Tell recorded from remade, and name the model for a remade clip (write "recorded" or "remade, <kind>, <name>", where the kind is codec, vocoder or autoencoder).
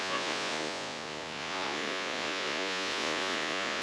remade, vocoder, Vocos